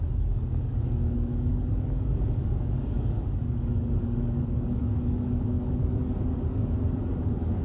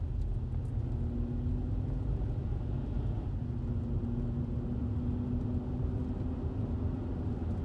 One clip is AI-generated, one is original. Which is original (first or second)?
second